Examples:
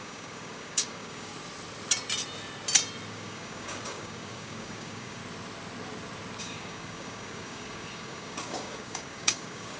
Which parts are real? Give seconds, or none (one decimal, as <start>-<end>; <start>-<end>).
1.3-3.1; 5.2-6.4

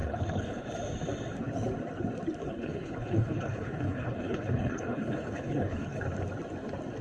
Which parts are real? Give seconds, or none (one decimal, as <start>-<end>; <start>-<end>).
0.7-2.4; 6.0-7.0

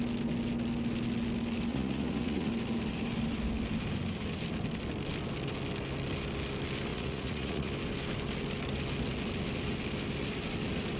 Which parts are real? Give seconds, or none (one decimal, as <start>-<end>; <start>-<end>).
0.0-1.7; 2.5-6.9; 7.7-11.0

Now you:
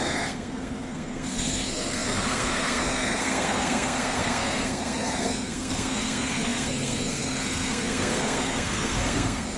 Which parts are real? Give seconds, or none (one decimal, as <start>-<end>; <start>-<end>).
none